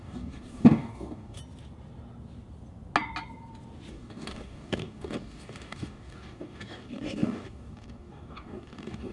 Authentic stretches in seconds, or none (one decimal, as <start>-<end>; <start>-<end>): 1.4-3.9

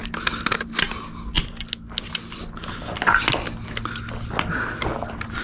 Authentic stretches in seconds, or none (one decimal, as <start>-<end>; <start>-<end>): 0.0-5.4

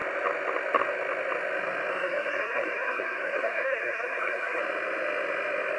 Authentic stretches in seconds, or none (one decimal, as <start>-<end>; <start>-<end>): 0.0-1.9; 4.6-5.8

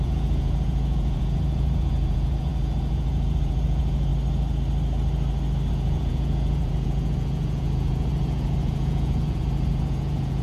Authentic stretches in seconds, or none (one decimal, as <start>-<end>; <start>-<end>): 4.1-5.7